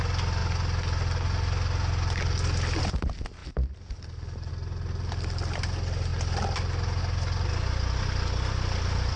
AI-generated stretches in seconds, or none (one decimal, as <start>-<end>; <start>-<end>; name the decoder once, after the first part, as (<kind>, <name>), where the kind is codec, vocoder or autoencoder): none